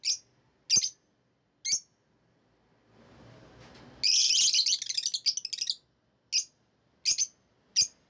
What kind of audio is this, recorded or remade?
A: recorded